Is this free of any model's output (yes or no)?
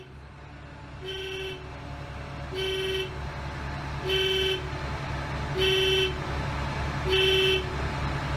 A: yes